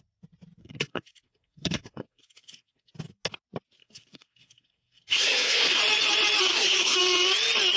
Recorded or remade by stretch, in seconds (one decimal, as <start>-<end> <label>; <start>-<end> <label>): 0.0-0.6 recorded; 0.6-2.9 remade; 2.9-3.8 recorded; 3.8-5.8 remade; 5.8-6.5 recorded; 6.5-7.0 remade; 7.0-7.8 recorded